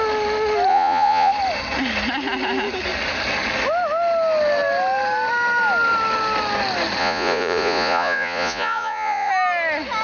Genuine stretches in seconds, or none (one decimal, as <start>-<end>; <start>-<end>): 0.0-0.7; 1.3-7.0; 9.3-10.0